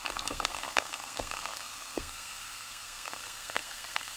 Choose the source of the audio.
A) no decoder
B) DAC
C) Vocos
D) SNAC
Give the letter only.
D